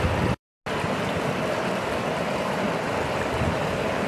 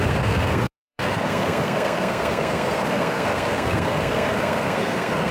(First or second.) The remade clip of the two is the second